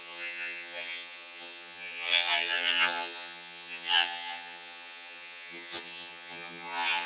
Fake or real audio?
fake